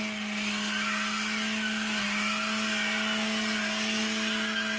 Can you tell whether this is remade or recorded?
recorded